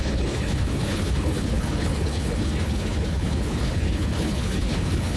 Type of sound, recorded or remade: remade